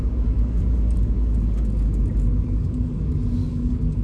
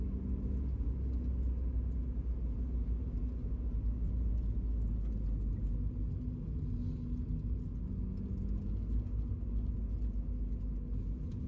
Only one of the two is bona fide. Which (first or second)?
second